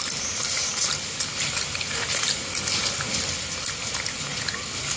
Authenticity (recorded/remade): recorded